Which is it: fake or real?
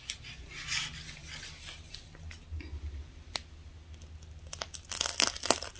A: real